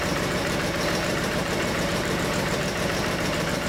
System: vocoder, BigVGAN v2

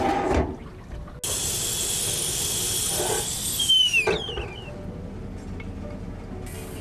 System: none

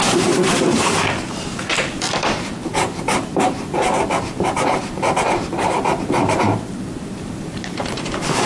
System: vocoder, BigVGAN v2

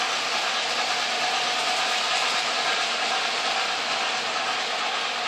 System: none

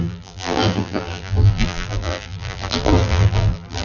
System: vocoder, BigVGAN v2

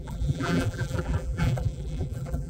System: vocoder, BigVGAN v2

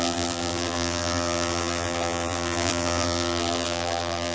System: vocoder, BigVGAN v2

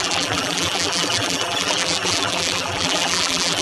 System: vocoder, BigVGAN v2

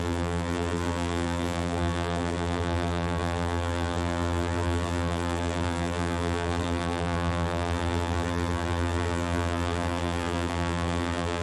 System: vocoder, BigVGAN v2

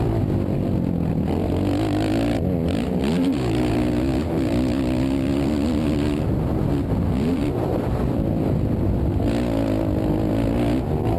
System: none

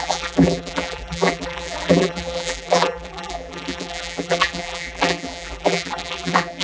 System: vocoder, BigVGAN v2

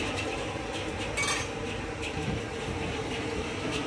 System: vocoder, BigVGAN v2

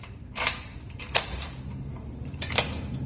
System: vocoder, BigVGAN v2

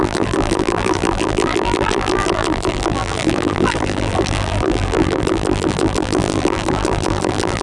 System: vocoder, BigVGAN v2